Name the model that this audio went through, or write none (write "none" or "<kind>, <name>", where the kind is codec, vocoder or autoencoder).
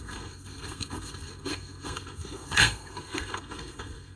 codec, SNAC